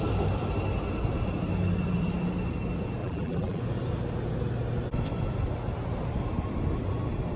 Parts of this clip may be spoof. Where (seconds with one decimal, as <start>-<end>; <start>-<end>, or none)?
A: 3.0-3.6